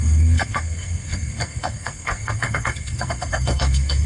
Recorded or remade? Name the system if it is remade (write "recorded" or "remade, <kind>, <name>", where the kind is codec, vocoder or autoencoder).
remade, codec, SNAC